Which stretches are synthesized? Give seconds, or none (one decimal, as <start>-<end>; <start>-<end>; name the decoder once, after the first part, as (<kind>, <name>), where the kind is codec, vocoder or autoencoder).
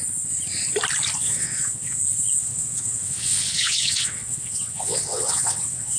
1.2-2.0 (vocoder, WaveNeXt); 2.4-6.0